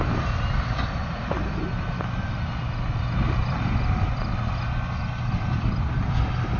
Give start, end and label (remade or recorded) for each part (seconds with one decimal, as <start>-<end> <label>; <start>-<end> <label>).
0.0-1.0 recorded; 1.0-1.5 remade; 1.5-6.6 recorded